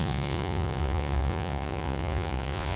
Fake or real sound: fake